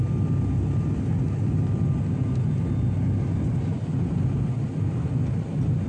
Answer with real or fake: real